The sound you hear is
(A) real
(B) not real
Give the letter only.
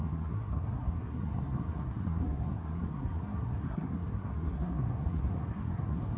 B